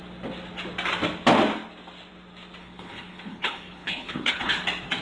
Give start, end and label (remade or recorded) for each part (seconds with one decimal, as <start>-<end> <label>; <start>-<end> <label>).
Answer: 0.0-2.6 recorded; 2.6-4.6 remade; 4.6-5.0 recorded